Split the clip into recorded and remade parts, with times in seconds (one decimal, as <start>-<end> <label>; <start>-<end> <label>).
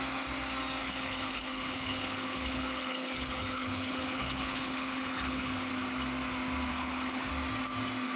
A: 0.0-0.8 recorded; 0.8-5.7 remade; 5.7-6.7 recorded; 6.7-7.3 remade; 7.3-8.2 recorded